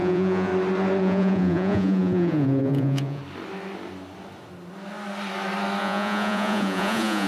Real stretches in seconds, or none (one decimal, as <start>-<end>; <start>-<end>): 0.5-1.0; 3.2-5.8